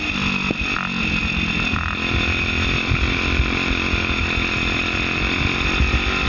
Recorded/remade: recorded